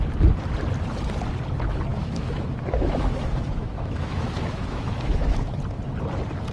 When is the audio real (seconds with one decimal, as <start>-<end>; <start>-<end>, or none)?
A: 0.0-1.9; 5.6-6.5